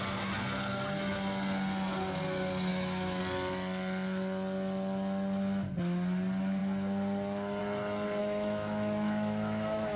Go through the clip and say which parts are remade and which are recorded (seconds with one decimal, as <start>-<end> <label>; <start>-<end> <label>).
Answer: 0.0-2.7 recorded; 2.7-3.2 remade; 3.2-8.2 recorded; 8.2-10.0 remade